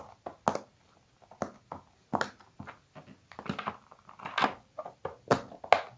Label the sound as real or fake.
real